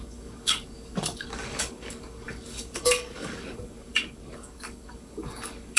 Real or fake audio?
fake